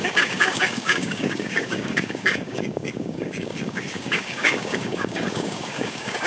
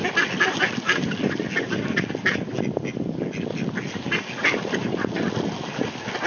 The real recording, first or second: second